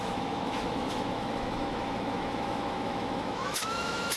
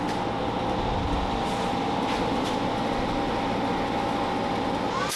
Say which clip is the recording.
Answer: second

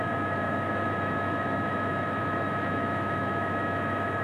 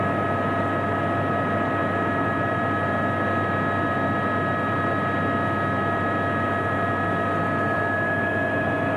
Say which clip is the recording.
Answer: second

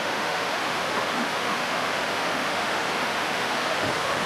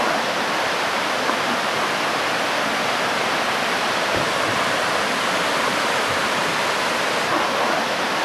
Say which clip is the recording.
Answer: second